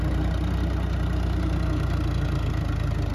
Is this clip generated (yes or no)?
no